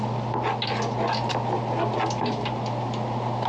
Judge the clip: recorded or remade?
recorded